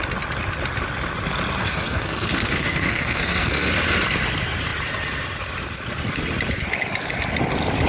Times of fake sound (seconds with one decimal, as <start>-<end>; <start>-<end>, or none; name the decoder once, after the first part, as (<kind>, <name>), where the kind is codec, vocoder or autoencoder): 1.6-3.7 (codec, SNAC)